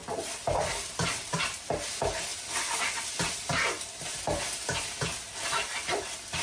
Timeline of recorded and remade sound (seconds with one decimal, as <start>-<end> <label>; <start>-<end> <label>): 0.0-6.4 recorded